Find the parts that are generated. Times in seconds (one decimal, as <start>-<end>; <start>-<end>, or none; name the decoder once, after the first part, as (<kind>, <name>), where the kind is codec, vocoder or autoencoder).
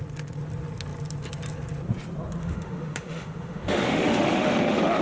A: 2.4-5.0 (autoencoder, DAC-VAE)